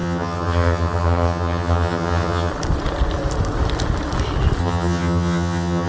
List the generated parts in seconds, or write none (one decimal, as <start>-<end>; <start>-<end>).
0.0-2.5; 4.6-5.9